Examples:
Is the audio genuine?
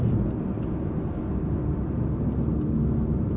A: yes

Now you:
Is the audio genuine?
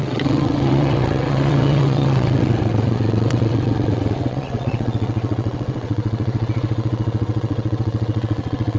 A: no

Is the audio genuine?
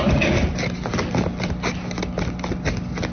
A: yes